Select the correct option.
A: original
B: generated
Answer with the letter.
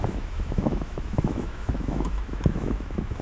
B